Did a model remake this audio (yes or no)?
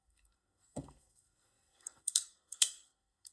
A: yes